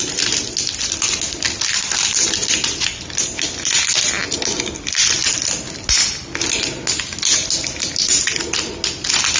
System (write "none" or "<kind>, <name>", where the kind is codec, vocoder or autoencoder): none